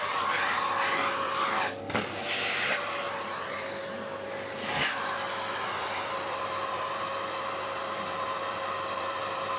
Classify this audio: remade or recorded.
remade